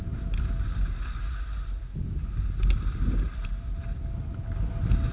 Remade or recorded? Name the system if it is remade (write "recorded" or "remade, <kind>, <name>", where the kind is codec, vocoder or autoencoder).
recorded